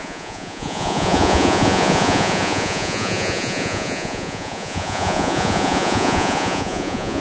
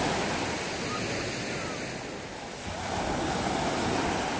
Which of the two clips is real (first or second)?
second